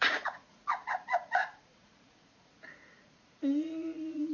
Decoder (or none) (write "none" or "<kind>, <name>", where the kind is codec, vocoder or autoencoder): vocoder, Vocos